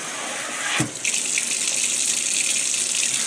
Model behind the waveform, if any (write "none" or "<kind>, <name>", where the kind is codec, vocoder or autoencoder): none